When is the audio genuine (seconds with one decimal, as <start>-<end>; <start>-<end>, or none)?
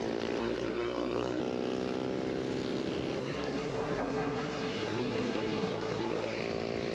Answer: 0.0-0.4; 1.4-3.2; 6.4-6.9